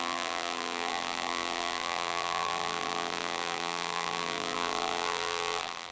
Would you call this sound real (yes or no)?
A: no